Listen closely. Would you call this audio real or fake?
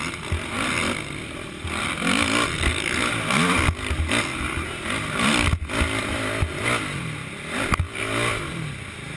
real